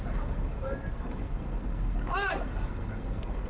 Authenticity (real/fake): fake